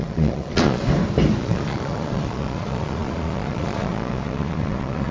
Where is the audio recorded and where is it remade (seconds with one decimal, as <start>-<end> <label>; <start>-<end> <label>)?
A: 0.0-0.8 remade; 0.8-1.4 recorded; 1.4-5.1 remade